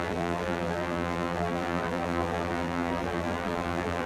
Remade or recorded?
remade